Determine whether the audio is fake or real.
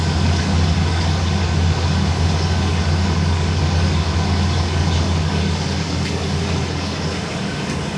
fake